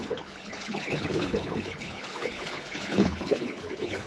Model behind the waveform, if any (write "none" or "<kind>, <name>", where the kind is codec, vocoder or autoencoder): codec, HILCodec